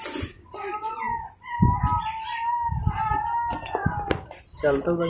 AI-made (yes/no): no